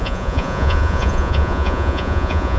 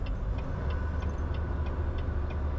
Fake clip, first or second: first